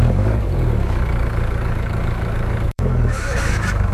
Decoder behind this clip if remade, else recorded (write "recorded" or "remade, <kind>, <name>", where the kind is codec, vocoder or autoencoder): remade, codec, DAC